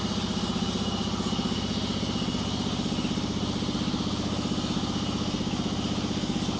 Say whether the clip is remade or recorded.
recorded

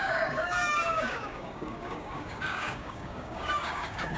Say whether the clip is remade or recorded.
remade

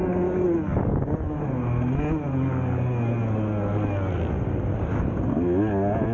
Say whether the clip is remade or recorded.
recorded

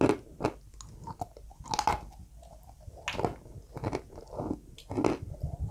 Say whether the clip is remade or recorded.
recorded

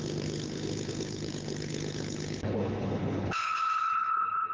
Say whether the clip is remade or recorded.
remade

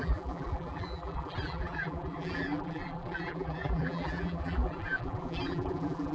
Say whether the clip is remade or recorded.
remade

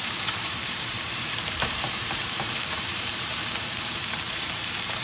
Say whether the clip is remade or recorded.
remade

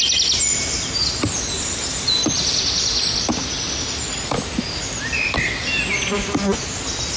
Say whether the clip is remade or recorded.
recorded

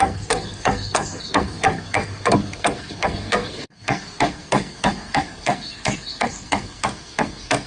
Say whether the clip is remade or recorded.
remade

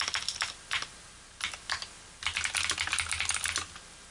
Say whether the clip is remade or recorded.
recorded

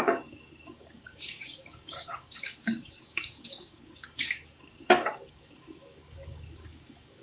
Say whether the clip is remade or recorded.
remade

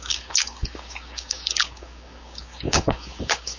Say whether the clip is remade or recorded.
remade